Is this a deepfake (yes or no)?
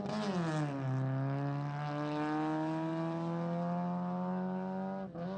no